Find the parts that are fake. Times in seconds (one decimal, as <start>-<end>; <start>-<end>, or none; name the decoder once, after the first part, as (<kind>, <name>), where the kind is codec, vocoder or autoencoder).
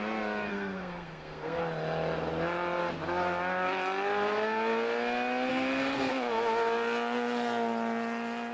0.5-1.6 (codec, SNAC); 5.5-6.1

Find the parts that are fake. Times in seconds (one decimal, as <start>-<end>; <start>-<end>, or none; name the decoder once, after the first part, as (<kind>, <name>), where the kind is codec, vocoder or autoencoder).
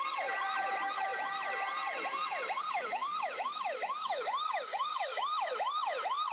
4.7-5.2 (codec, DAC)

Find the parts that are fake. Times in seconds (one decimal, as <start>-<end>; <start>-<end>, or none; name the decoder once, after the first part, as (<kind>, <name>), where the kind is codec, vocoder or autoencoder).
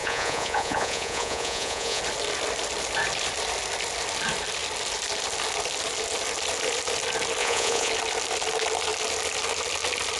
0.0-2.0 (vocoder, Vocos); 7.4-7.9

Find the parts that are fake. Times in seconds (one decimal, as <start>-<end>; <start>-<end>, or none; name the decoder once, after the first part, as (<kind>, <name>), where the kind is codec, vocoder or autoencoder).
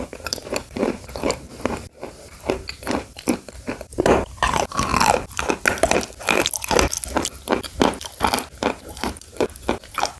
0.0-4.9 (vocoder, BigVGAN v2); 8.8-10.2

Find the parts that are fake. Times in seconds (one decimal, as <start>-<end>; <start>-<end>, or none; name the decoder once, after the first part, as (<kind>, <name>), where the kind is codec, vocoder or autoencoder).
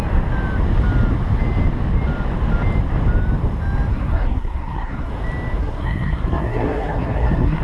3.9-5.1 (codec, SNAC); 5.6-7.6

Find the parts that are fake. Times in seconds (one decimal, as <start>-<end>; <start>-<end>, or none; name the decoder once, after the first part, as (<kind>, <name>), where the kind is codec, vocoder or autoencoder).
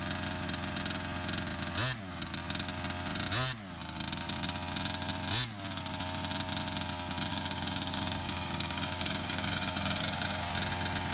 7.3-10.5 (codec, DAC)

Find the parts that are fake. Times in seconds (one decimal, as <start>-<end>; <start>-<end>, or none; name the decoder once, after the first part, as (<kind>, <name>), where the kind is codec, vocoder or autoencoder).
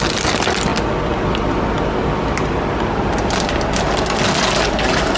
none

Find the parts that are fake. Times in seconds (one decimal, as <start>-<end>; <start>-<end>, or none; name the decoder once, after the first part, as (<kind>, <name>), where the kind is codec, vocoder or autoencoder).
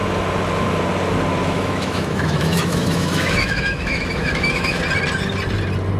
1.4-4.8 (autoencoder, DAC-VAE)